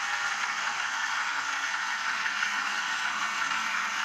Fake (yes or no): yes